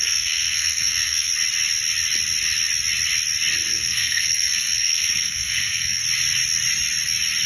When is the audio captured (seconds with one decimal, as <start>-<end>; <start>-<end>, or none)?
1.3-3.7; 6.0-7.5